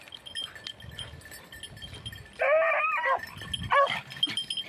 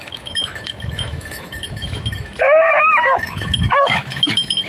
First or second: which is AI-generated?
second